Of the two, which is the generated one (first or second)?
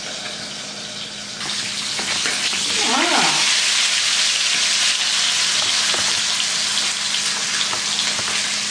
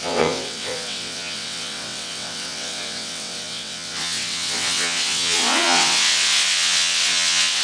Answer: second